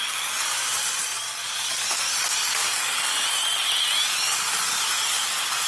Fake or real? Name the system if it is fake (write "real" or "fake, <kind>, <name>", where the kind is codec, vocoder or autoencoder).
real